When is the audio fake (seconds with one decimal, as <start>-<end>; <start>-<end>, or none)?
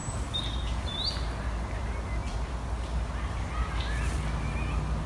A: none